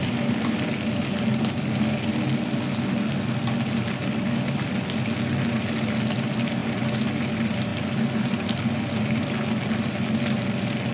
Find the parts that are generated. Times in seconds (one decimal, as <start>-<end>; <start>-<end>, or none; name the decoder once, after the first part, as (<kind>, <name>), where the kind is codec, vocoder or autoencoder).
none